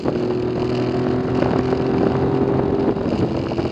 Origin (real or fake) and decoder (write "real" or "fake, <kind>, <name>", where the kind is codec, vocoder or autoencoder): real